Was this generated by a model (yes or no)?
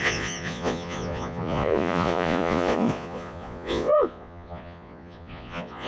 yes